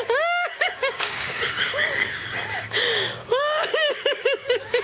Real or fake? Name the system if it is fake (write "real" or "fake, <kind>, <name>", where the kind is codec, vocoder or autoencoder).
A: fake, codec, DAC